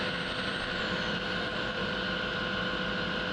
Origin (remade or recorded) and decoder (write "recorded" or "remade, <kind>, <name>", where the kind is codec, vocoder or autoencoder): recorded